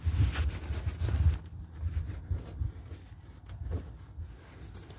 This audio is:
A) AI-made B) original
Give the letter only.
B